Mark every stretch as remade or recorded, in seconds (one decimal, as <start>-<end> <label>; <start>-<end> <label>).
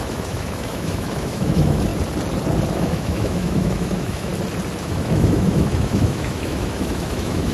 0.0-1.9 remade; 1.9-2.7 recorded; 2.7-4.3 remade; 4.3-4.8 recorded; 4.8-7.5 remade